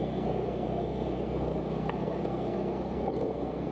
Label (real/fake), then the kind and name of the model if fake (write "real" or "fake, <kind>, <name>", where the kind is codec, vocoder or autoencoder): fake, codec, SNAC